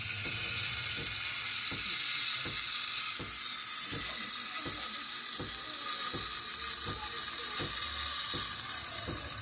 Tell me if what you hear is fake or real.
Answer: real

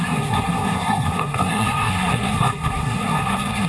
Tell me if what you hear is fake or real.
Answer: fake